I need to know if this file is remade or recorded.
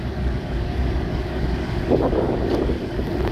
remade